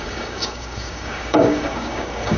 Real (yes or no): no